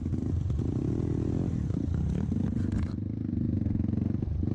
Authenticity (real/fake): real